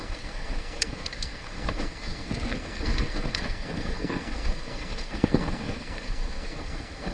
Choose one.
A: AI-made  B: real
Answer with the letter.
A